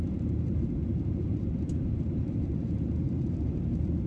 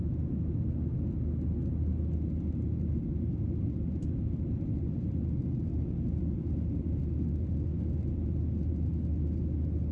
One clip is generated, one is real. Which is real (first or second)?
second